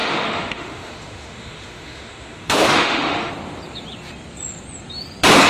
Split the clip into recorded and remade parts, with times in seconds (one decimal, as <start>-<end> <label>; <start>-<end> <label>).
0.0-3.3 remade; 3.3-5.5 recorded